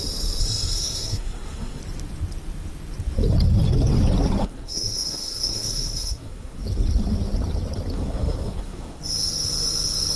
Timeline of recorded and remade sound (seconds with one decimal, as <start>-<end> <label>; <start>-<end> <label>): 0.0-0.4 recorded; 0.4-1.8 remade; 1.8-4.4 recorded; 4.4-6.6 remade; 6.6-7.9 recorded; 7.9-9.0 remade; 9.0-10.2 recorded